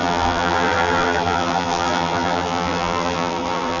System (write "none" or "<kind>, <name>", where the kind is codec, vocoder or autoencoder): vocoder, BigVGAN v2